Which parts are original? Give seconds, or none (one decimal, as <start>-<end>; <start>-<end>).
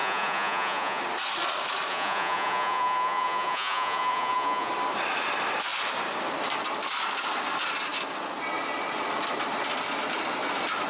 1.0-1.9; 4.7-10.9